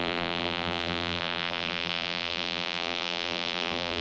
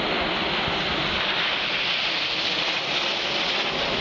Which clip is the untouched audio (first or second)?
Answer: second